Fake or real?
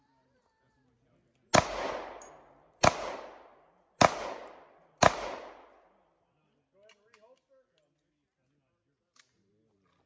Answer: real